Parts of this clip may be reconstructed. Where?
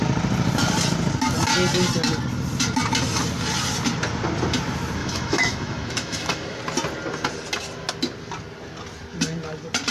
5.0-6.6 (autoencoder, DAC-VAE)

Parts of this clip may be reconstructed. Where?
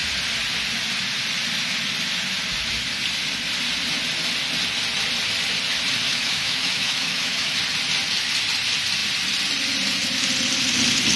6.1-7.6 (autoencoder, DAC-VAE)